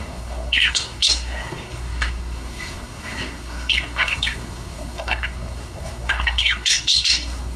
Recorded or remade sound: remade